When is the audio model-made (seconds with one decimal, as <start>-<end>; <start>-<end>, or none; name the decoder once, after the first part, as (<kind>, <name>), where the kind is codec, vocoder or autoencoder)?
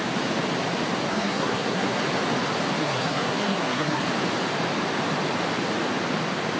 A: 1.1-2.0 (codec, SNAC); 2.8-4.0